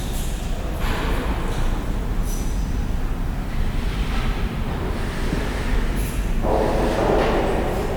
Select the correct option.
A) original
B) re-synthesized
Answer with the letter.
A